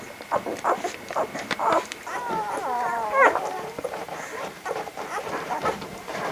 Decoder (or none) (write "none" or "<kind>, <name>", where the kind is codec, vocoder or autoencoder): vocoder, BigVGAN v2